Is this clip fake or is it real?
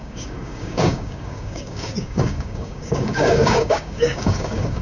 fake